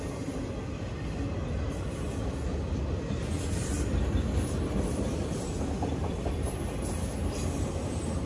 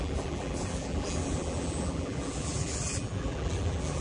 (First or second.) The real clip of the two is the first